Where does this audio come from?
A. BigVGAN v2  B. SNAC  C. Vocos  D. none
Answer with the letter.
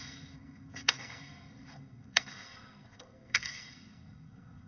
B